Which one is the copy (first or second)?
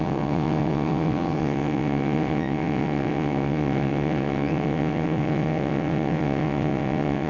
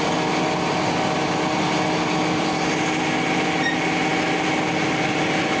first